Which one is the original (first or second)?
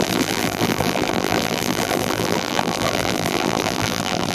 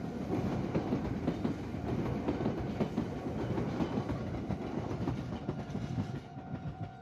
second